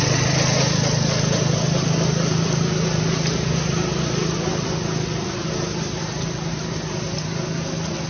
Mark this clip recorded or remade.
recorded